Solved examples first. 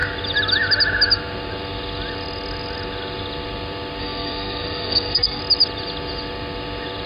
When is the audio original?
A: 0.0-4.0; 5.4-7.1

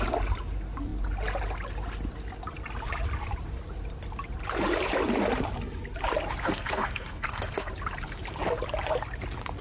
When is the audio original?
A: 0.0-6.4; 7.7-9.6

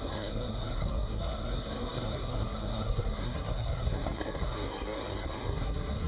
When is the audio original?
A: none

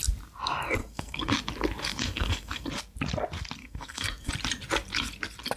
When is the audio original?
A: 0.0-0.8; 1.3-1.9; 2.7-3.6; 4.3-5.6